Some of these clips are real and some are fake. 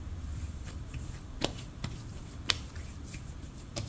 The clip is fake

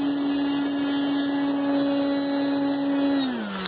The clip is real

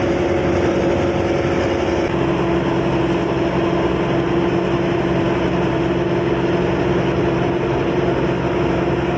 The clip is real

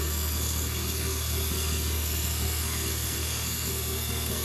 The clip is fake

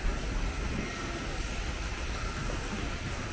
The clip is real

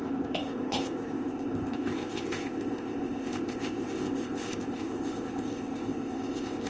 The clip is fake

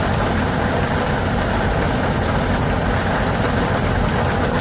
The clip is real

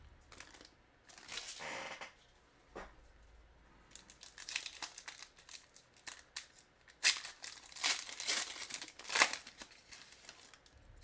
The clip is real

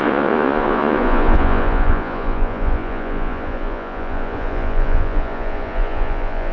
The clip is fake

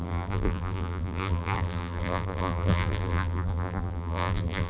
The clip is fake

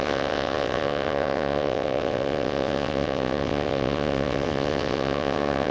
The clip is fake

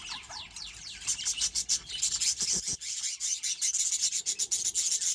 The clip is real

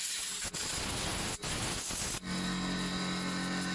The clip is real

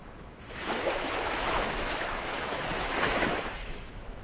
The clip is fake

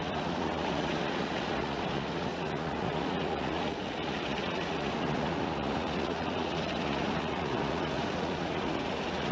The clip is fake